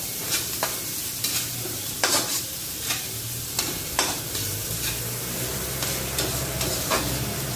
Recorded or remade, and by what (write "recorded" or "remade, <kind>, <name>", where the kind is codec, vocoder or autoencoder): remade, vocoder, BigVGAN v2